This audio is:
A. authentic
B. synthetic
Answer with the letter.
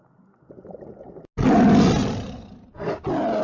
A